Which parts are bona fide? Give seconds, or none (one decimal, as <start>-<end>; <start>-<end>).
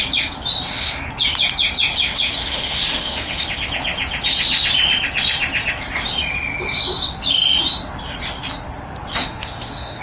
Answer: 0.0-2.4; 3.4-9.2